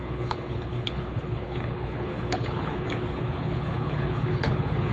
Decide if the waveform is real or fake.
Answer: fake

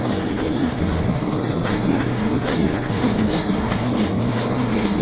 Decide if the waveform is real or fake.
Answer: fake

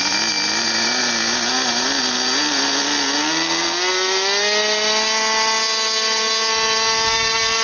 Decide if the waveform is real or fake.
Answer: real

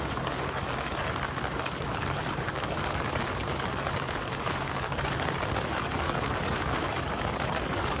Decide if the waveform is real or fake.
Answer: fake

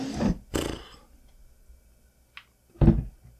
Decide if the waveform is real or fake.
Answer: real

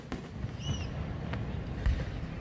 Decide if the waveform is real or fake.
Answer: real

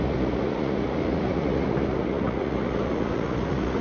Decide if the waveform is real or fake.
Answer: fake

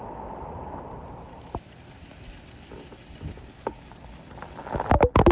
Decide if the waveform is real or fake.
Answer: real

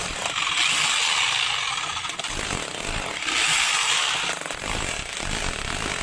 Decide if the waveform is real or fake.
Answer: real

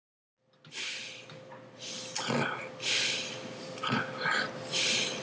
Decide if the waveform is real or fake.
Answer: real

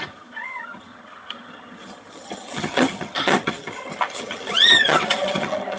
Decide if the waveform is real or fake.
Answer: fake